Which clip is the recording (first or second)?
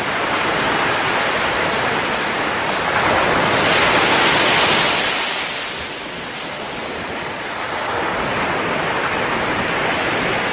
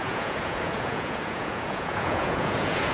first